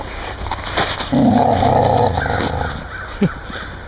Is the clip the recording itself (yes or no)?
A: yes